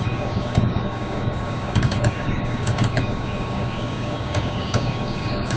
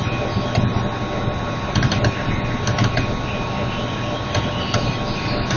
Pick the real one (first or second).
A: second